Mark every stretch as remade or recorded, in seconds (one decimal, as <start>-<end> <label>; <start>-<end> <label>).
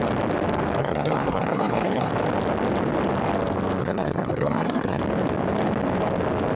0.0-0.8 recorded; 0.8-2.1 remade; 2.1-3.8 recorded; 3.8-5.0 remade; 5.0-6.6 recorded